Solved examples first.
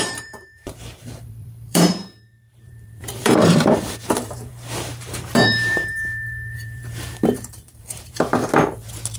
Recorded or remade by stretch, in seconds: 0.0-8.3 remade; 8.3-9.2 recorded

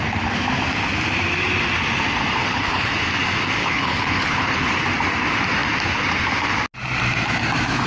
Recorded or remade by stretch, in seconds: 0.0-2.4 recorded; 2.4-2.9 remade; 2.9-3.6 recorded; 3.6-4.7 remade; 4.7-7.9 recorded

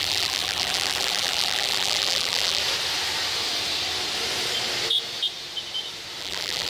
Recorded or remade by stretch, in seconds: 0.0-2.6 remade; 2.6-6.2 recorded; 6.2-6.7 remade

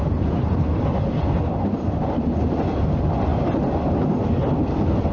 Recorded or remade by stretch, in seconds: 0.0-5.1 recorded

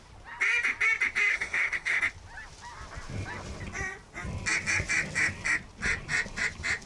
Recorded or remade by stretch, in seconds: 0.0-1.3 recorded; 1.3-2.0 remade; 2.0-6.9 recorded